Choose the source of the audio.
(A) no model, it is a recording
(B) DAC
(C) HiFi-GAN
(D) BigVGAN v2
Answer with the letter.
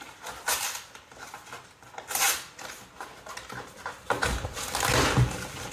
A